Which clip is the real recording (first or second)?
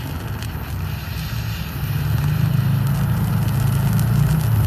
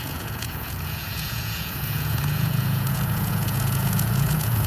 first